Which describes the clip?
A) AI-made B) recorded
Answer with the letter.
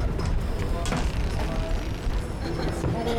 B